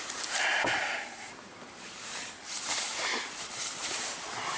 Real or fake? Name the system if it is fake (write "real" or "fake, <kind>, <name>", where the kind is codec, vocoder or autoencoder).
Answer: fake, vocoder, BigVGAN v2